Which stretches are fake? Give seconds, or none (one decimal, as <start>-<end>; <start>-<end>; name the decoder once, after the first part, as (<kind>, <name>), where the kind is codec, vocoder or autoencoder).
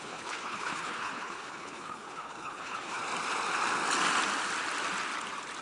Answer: 0.0-3.0 (codec, HILCodec)